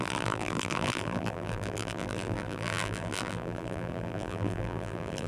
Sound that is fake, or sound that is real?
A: fake